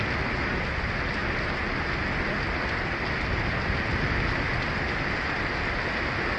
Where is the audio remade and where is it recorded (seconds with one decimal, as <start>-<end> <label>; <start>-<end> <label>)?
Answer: 0.0-6.4 recorded